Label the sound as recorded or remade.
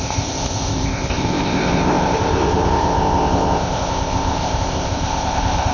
remade